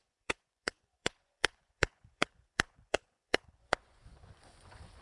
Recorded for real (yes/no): no